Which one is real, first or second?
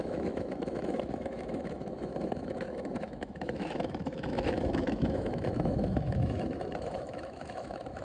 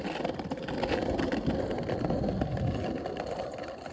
second